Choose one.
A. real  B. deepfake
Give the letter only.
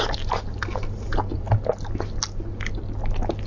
A